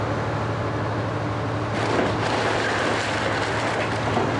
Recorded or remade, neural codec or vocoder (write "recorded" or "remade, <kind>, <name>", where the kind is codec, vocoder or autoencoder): recorded